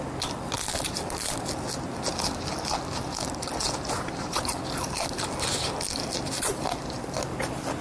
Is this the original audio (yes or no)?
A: yes